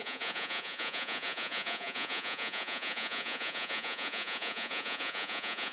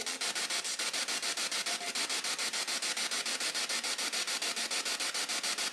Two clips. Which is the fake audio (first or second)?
first